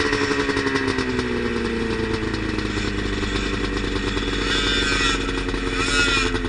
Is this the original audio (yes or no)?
yes